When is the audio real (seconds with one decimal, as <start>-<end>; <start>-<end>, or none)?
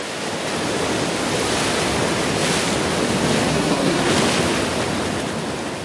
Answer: 0.0-3.5; 4.1-5.8